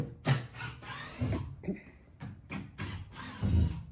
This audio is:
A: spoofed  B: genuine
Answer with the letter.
B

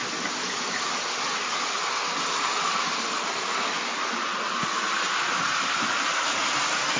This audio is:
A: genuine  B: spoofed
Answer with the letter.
A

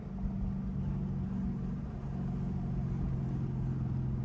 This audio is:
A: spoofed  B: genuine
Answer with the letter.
B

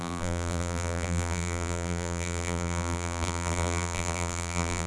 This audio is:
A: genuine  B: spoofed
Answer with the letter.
B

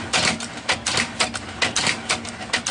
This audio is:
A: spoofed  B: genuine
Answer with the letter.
B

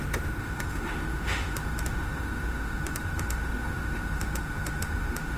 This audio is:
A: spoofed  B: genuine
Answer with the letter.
A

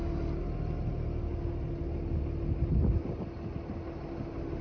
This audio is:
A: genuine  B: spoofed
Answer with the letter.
A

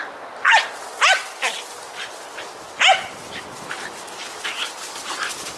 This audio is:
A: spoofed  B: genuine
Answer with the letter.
B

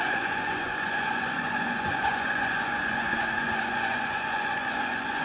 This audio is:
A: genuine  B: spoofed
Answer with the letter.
B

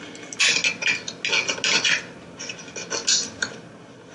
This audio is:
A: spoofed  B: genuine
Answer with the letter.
B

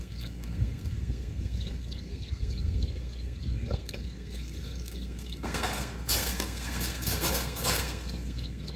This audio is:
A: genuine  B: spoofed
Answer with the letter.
B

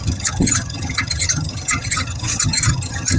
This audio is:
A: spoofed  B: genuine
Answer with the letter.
A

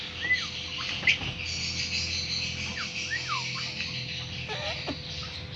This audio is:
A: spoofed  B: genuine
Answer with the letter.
B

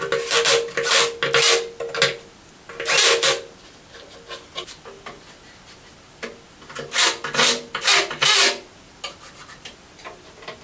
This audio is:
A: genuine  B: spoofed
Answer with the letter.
A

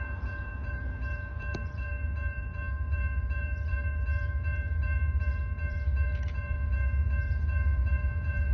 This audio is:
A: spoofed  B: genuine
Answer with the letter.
A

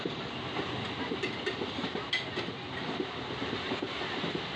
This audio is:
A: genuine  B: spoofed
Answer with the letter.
A